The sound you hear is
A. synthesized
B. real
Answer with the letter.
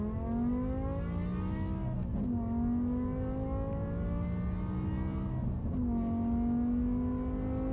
B